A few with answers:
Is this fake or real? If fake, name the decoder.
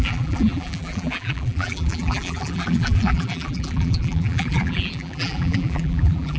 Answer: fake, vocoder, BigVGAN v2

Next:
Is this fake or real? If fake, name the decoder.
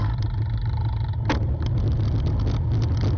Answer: real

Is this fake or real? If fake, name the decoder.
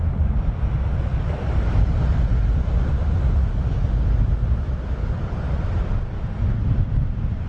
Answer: real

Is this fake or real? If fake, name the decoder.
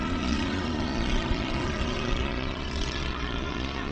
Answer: fake, vocoder, Vocos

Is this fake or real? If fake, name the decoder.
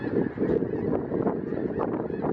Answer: real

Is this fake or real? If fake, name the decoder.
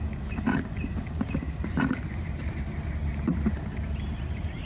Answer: real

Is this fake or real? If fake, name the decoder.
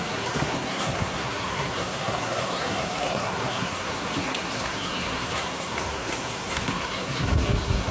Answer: fake, codec, SNAC